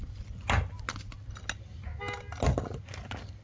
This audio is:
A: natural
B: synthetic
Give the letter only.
A